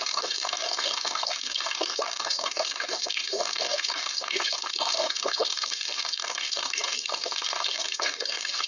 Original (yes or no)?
no